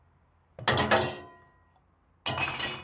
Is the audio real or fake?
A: real